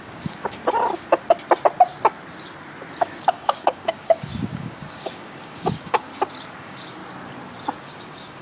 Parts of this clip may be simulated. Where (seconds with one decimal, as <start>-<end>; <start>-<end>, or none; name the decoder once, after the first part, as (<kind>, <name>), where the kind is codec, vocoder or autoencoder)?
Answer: 0.0-0.6 (codec, DAC); 3.0-6.1; 6.6-7.0; 7.8-8.4